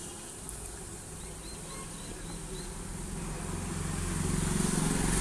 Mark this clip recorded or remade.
recorded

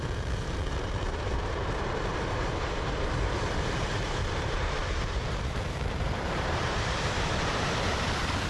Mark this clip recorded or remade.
remade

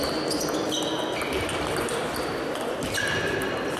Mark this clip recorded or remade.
recorded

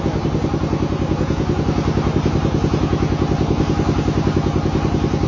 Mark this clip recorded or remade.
recorded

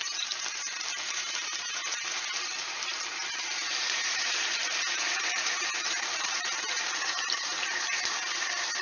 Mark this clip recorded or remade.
remade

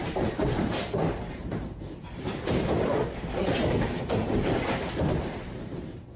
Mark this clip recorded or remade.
remade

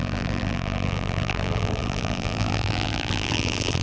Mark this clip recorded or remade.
remade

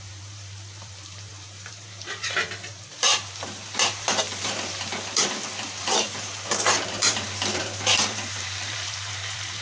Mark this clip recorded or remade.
remade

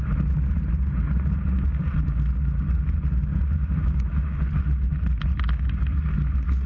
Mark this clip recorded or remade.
recorded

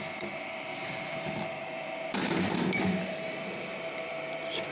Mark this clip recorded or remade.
remade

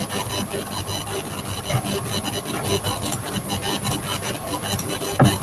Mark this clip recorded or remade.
recorded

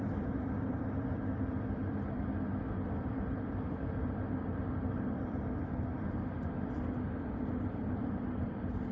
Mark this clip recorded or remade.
remade